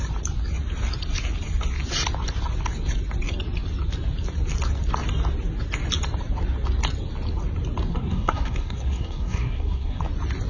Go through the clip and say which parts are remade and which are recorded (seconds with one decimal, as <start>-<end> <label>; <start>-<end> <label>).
0.0-7.9 recorded; 7.9-10.0 remade; 10.0-10.5 recorded